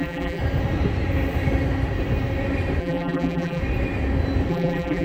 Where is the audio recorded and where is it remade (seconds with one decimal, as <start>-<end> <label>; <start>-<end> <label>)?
0.0-0.4 remade; 0.4-2.8 recorded; 2.8-3.6 remade; 3.6-4.5 recorded; 4.5-5.0 remade